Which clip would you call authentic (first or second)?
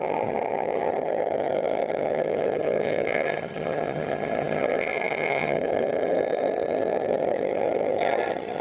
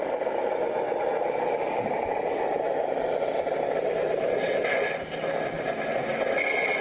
second